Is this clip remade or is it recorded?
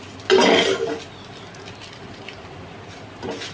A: recorded